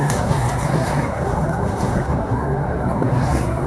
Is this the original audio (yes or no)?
no